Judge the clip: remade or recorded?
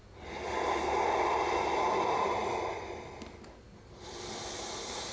recorded